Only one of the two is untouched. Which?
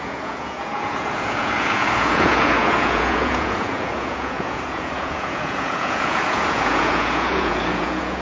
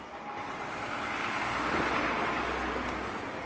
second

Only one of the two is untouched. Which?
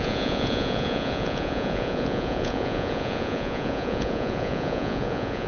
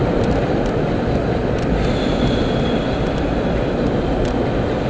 second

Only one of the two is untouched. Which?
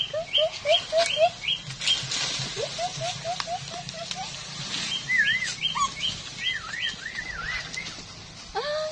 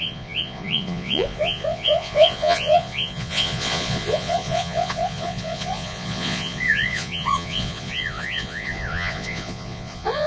first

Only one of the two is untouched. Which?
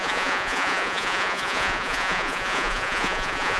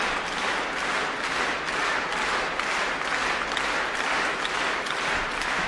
second